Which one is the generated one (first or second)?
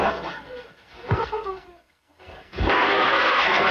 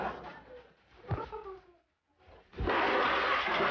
first